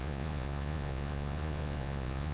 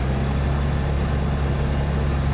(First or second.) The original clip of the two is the second